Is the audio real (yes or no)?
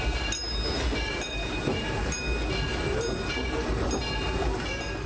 yes